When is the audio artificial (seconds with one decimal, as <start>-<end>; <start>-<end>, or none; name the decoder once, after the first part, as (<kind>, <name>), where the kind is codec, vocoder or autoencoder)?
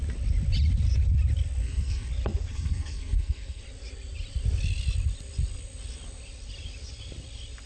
1.6-2.1 (codec, SNAC); 2.5-3.6